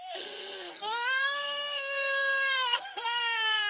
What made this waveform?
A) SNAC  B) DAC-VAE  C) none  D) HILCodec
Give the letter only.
A